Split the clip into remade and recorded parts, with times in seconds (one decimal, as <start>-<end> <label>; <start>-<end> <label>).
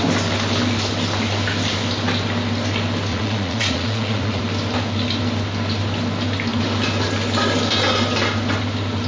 0.0-3.1 recorded; 3.1-4.4 remade; 4.4-9.1 recorded